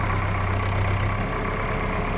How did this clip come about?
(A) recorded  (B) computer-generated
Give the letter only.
A